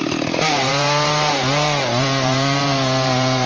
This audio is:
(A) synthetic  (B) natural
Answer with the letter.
A